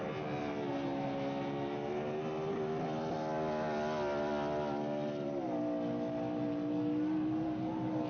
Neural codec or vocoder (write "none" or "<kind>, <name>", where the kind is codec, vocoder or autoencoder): none